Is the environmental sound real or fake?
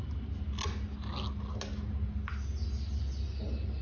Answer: real